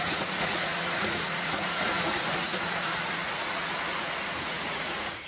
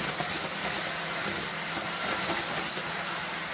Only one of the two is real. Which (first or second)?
second